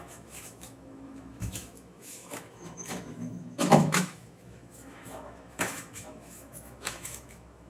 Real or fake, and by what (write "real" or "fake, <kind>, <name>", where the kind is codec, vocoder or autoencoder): fake, autoencoder, DAC-VAE